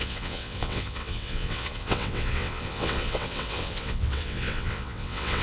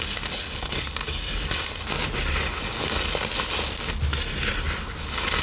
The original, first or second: second